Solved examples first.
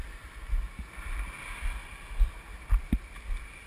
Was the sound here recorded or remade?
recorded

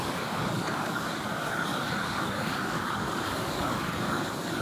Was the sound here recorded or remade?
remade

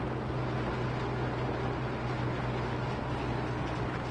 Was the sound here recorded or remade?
recorded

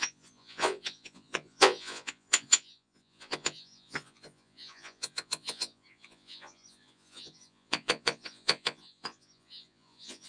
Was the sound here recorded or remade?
remade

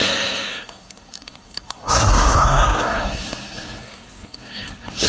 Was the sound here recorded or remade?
remade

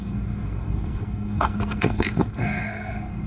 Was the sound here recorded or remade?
remade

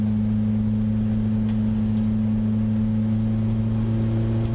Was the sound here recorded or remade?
recorded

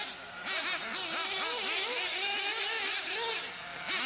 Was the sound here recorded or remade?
recorded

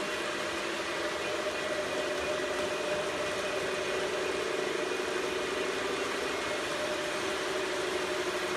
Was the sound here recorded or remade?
recorded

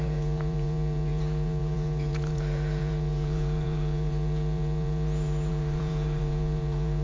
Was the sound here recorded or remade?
remade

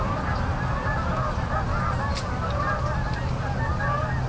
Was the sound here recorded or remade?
recorded